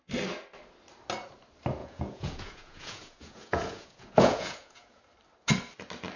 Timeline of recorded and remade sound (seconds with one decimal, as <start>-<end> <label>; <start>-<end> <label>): 0.0-1.8 recorded; 1.8-5.0 remade; 5.0-6.2 recorded